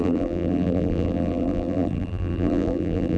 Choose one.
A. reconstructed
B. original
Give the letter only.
A